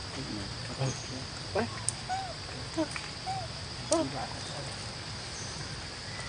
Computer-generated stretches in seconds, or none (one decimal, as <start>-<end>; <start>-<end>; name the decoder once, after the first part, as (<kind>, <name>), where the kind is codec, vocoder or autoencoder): none